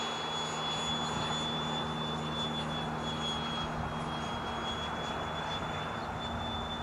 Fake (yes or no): no